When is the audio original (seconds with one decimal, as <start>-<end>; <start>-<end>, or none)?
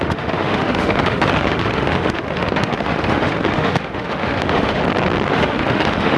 4.8-5.3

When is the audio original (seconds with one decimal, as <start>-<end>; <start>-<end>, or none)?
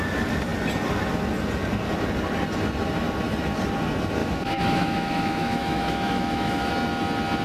0.0-4.2; 6.7-7.4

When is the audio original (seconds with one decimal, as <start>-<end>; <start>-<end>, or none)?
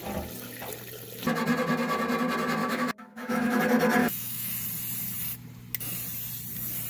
0.0-2.6; 3.6-4.0; 4.5-6.9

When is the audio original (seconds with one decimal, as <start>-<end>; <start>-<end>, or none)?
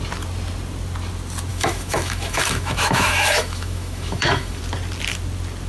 0.0-1.5; 4.6-5.7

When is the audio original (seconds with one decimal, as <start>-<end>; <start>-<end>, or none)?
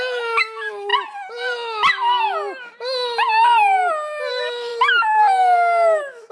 0.9-4.3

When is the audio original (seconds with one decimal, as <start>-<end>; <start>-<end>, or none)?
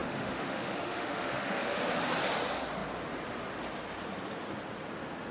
1.8-5.3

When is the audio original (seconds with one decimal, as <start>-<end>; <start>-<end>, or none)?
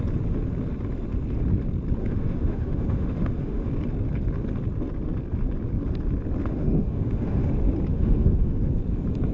0.0-2.0; 3.7-6.4; 7.5-7.9; 8.7-9.3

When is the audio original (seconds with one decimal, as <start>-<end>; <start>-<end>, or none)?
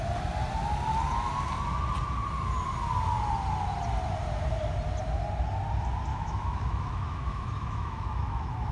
0.0-6.1